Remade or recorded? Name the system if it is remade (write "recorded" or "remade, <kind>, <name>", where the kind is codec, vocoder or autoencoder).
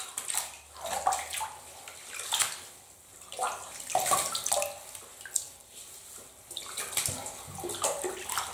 recorded